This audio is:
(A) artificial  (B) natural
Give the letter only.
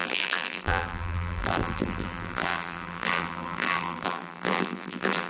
A